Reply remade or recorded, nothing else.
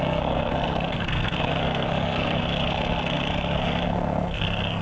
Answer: remade